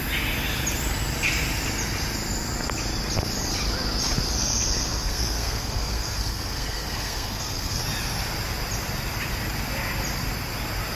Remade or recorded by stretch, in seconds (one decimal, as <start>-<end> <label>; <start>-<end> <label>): 0.0-4.4 recorded; 4.4-7.8 remade; 7.8-10.9 recorded